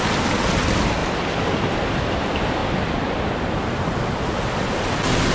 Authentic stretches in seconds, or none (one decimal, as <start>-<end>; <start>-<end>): 0.0-5.3